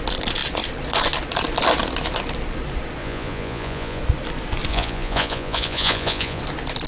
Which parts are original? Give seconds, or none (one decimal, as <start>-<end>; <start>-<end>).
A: 0.0-3.0; 4.0-4.7; 6.4-6.9